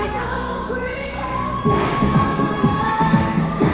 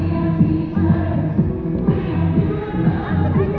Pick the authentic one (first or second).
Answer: second